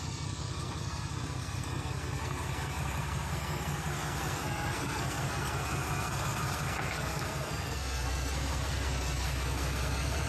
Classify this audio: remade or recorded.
remade